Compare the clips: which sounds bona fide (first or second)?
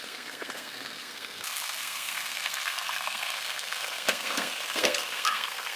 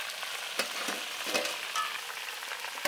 second